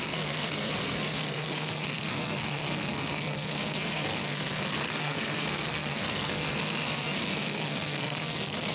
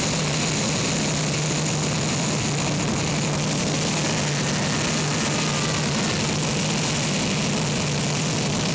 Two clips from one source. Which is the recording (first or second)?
second